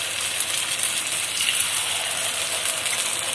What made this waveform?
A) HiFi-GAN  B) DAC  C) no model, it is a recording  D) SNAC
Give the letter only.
C